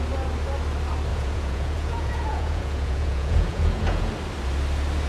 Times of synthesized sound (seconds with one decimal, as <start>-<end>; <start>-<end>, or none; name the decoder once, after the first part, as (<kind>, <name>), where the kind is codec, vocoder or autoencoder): 1.1-4.1 (vocoder, Vocos)